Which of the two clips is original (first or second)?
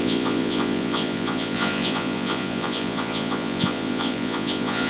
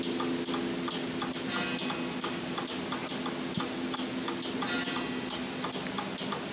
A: second